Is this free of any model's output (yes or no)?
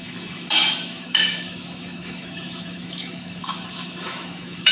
no